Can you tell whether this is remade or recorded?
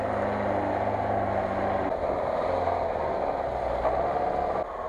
recorded